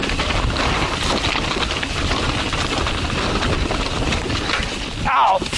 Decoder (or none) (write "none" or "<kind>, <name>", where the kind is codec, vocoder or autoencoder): none